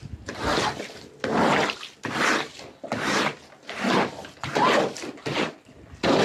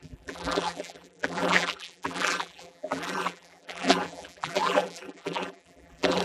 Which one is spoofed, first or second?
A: second